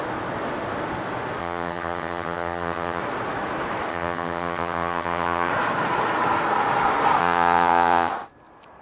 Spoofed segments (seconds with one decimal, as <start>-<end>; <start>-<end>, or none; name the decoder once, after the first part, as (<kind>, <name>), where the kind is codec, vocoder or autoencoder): 1.4-3.0 (vocoder, HiFi-GAN); 3.9-5.5; 7.2-8.1